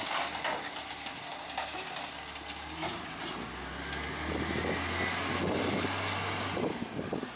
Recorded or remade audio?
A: recorded